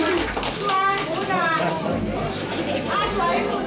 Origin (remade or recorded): remade